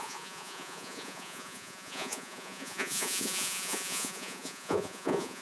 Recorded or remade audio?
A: remade